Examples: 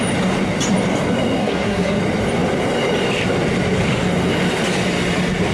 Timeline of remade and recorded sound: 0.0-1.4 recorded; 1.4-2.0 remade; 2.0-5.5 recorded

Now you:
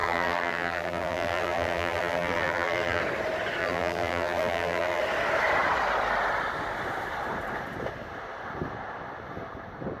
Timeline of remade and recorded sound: 0.0-3.0 remade; 3.0-3.6 recorded; 3.6-5.0 remade; 5.0-10.0 recorded

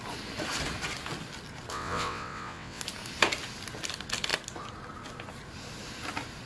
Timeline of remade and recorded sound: 0.0-1.7 recorded; 1.7-2.8 remade; 2.8-6.5 recorded

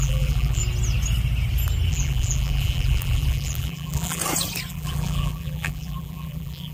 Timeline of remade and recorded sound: 0.0-0.6 remade; 0.6-1.9 recorded; 1.9-4.2 remade; 4.2-4.7 recorded; 4.7-6.7 remade